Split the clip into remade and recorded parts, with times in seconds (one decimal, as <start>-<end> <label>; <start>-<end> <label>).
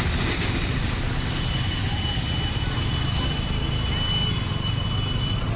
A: 0.0-5.6 recorded